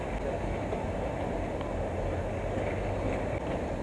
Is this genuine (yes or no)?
yes